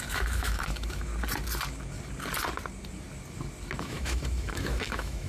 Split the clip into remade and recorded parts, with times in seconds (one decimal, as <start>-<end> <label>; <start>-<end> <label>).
0.0-1.1 remade; 1.1-3.8 recorded; 3.8-5.3 remade